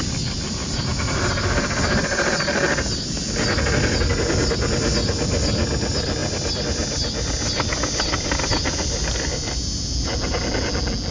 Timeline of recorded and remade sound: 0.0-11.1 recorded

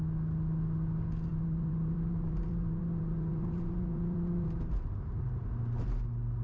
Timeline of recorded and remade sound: 0.0-1.3 recorded; 1.3-5.1 remade; 5.1-6.4 recorded